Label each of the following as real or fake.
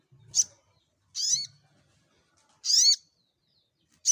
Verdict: real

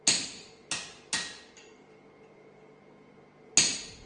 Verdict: real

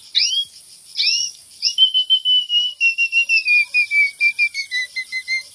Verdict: real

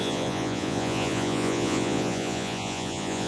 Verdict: fake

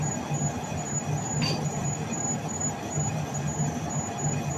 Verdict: real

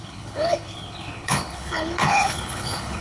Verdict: fake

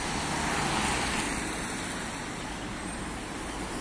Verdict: real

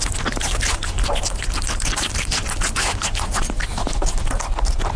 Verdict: real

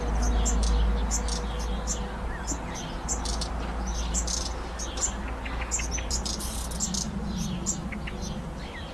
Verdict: real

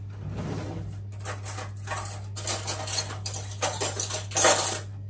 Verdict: real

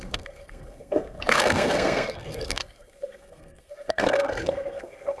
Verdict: fake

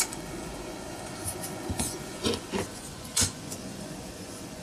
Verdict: fake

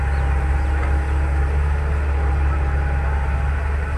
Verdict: real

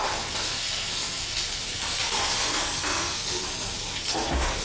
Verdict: fake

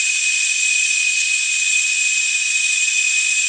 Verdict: fake